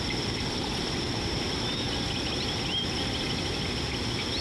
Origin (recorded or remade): recorded